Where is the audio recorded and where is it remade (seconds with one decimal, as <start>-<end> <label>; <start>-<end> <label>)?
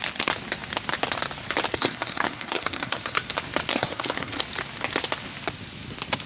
0.0-1.7 recorded; 1.7-3.3 remade; 3.3-3.7 recorded; 3.7-4.4 remade; 4.4-6.3 recorded